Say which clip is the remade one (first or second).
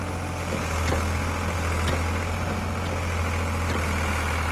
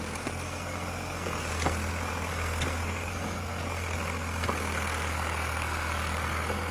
second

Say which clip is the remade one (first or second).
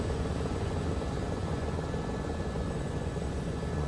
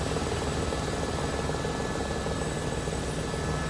first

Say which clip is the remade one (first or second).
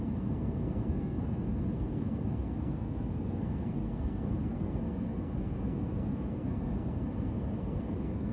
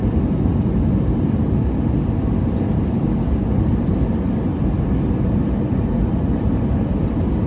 first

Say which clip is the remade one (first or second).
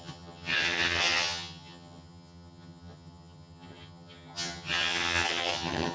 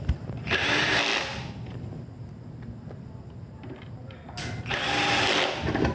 first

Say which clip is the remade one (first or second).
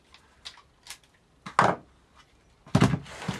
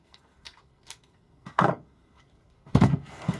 second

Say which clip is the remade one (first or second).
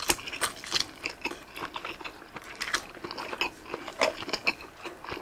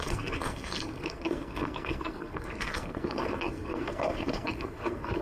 second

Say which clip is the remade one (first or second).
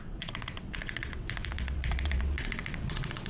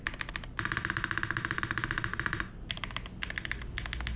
first